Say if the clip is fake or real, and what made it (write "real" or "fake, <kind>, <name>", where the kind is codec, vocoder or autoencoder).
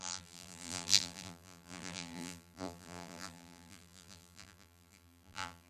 fake, vocoder, BigVGAN v2